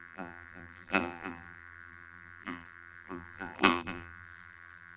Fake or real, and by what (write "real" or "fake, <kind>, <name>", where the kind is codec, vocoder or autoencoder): fake, vocoder, BigVGAN v2